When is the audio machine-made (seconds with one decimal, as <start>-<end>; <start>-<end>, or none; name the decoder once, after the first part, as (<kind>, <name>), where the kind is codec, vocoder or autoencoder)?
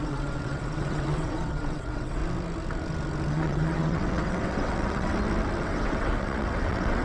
0.0-2.2 (vocoder, WaveNeXt); 3.3-5.1; 5.6-7.0